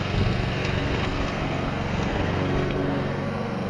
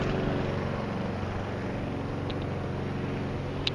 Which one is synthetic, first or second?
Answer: first